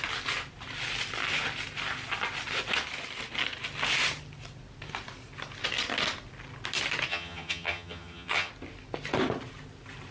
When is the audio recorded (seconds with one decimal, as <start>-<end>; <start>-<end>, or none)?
0.0-7.1; 8.5-10.1